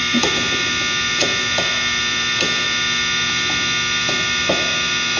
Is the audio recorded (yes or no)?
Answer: no